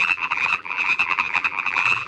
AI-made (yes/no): yes